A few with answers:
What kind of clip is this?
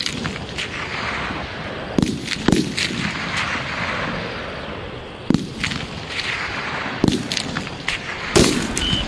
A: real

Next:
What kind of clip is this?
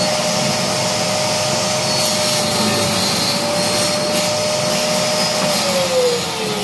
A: real